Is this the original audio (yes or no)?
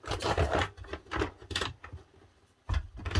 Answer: yes